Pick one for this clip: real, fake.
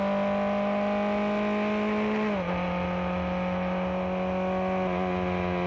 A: real